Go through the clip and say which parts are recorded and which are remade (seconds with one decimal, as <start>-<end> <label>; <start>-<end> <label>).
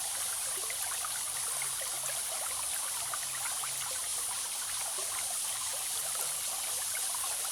0.0-4.1 recorded; 4.1-6.4 remade; 6.4-7.5 recorded